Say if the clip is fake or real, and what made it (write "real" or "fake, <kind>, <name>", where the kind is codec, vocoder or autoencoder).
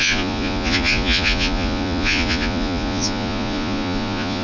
fake, vocoder, Vocos